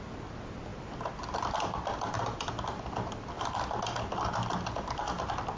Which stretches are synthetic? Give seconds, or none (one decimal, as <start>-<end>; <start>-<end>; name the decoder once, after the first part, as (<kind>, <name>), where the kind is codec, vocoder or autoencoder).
0.7-3.5 (vocoder, BigVGAN v2)